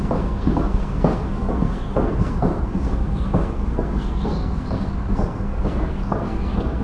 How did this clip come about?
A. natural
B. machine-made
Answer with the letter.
B